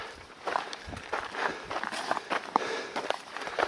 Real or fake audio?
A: fake